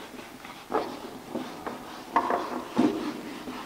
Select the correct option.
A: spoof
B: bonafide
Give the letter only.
B